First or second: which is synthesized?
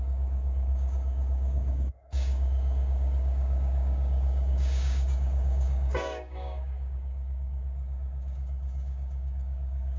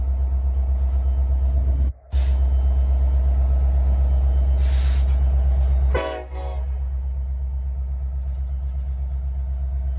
first